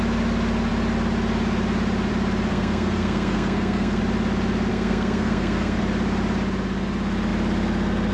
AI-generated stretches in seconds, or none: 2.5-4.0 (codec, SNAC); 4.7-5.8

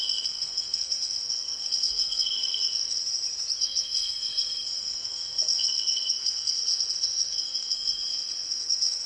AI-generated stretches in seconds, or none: 0.0-3.0 (codec, SNAC); 3.6-9.1